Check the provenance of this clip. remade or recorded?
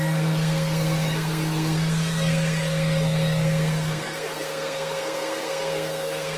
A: remade